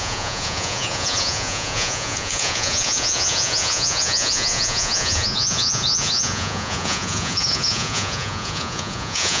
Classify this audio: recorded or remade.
remade